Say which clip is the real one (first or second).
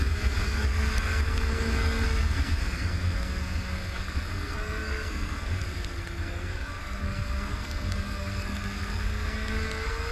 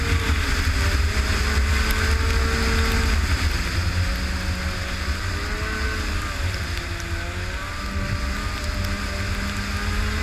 second